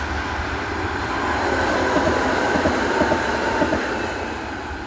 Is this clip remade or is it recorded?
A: recorded